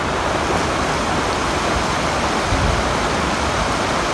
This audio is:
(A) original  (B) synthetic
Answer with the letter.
A